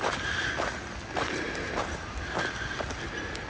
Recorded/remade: recorded